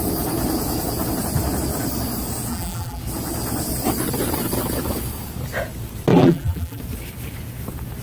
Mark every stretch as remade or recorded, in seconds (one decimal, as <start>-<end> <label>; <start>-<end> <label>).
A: 0.0-2.5 recorded; 2.5-3.0 remade; 3.0-6.1 recorded; 6.1-6.8 remade; 6.8-8.0 recorded